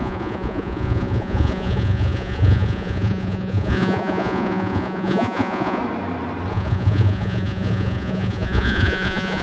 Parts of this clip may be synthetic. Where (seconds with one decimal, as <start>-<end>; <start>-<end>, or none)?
0.0-5.8; 6.5-9.4